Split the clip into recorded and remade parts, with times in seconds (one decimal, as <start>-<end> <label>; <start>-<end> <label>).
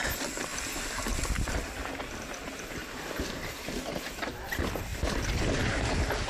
0.0-2.8 recorded; 2.8-3.7 remade; 3.7-6.3 recorded